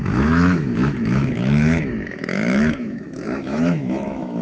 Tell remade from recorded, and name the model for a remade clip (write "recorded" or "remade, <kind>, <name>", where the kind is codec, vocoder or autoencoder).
remade, autoencoder, DAC-VAE